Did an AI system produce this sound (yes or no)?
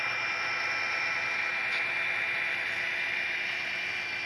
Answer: no